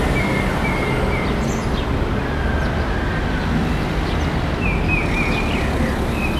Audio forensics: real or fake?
real